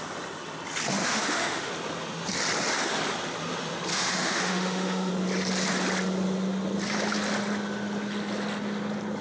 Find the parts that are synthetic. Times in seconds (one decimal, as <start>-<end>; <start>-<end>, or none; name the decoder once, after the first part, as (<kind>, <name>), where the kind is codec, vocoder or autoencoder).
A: 1.0-1.7 (autoencoder, DAC-VAE); 3.9-5.1